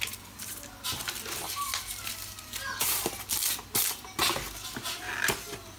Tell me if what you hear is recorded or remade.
recorded